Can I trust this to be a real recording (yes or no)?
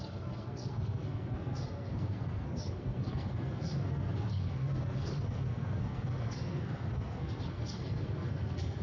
no